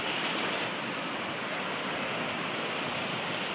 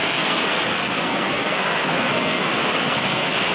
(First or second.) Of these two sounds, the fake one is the second